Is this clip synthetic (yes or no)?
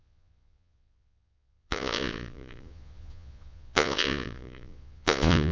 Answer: yes